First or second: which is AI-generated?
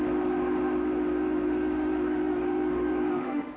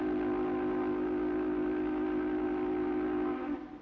first